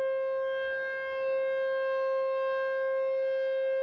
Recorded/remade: recorded